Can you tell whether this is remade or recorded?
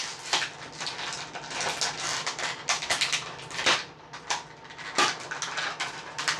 recorded